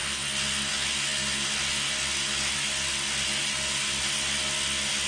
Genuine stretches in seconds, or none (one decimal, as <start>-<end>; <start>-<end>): 0.0-5.1